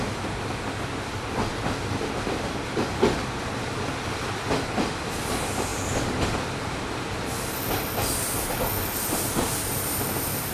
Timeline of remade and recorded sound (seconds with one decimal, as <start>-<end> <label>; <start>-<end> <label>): 0.0-10.5 recorded

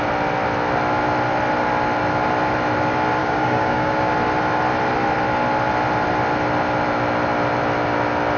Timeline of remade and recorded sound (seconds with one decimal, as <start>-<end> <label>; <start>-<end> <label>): 0.0-3.2 recorded; 3.2-4.1 remade; 4.1-8.4 recorded

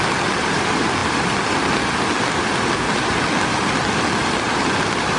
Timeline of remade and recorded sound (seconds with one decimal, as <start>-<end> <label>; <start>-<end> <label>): 0.0-5.2 recorded